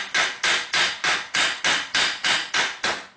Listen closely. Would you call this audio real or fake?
real